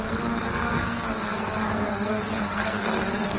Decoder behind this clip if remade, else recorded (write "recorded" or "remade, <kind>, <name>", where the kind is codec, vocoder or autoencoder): remade, codec, SNAC